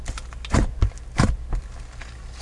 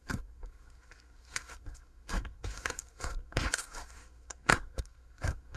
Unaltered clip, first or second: first